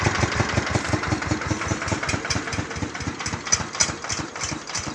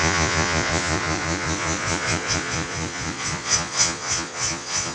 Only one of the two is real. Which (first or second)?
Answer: first